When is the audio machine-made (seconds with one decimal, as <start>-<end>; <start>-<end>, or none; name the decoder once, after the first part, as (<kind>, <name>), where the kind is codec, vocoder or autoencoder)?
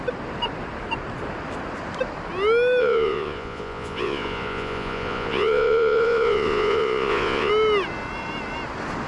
2.8-7.5 (vocoder, Vocos)